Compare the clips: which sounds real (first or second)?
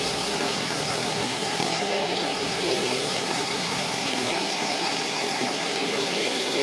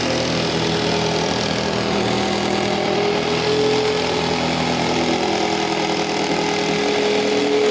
second